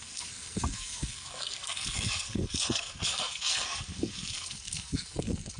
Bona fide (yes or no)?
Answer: no